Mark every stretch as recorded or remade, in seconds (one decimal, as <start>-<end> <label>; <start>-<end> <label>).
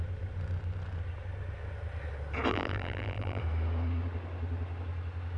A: 0.0-2.5 recorded; 2.5-3.4 remade; 3.4-5.4 recorded